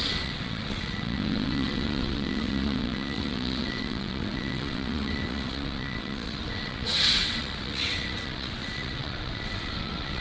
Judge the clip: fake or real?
fake